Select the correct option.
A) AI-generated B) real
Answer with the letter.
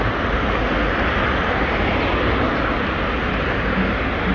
B